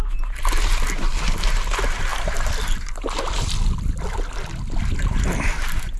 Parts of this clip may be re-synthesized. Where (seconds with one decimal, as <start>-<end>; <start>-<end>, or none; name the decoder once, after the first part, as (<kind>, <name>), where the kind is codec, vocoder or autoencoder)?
none